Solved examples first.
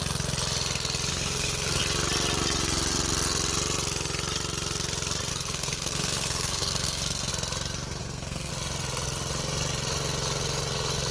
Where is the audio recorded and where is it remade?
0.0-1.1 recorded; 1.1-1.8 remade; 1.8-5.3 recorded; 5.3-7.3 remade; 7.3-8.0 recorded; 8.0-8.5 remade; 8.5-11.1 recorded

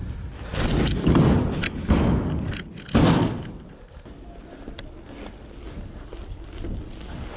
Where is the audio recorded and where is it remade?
0.0-7.4 recorded

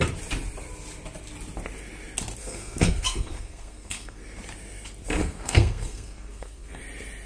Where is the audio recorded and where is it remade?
0.0-2.4 recorded; 2.4-4.2 remade; 4.2-5.2 recorded; 5.2-6.8 remade; 6.8-7.3 recorded